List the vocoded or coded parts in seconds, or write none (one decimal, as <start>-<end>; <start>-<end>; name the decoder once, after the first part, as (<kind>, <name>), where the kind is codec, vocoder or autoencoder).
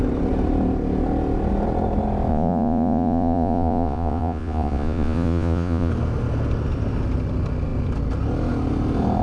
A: 2.3-5.9 (vocoder, Vocos)